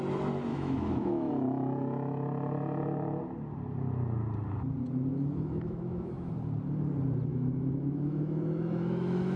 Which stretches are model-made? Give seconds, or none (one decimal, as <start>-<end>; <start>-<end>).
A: 0.5-1.3; 5.1-6.3; 7.3-9.4